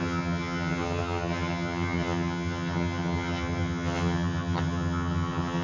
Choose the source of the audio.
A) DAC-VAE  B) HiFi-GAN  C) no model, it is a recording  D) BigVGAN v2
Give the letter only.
B